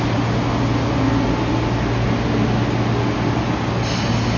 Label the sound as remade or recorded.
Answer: recorded